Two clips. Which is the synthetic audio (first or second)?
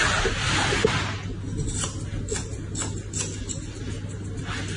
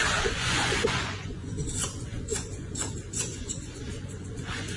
second